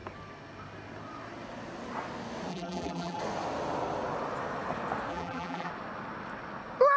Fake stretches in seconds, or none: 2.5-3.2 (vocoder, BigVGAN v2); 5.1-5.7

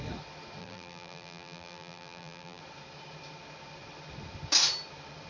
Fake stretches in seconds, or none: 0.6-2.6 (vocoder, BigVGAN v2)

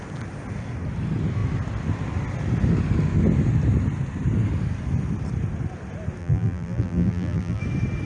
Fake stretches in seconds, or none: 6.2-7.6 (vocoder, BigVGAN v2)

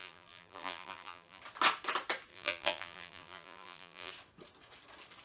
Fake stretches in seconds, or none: 0.0-1.4 (vocoder, BigVGAN v2); 2.3-4.1

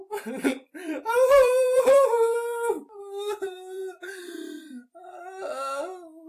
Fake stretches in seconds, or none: 0.4-4.2 (vocoder, BigVGAN v2)

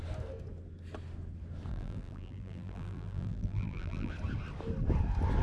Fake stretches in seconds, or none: 1.7-4.1 (vocoder, BigVGAN v2)

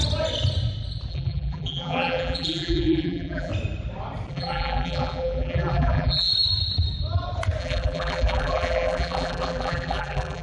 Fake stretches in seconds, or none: 1.1-3.5 (vocoder, BigVGAN v2); 4.3-6.3; 7.6-10.4